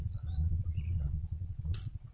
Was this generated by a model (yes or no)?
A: yes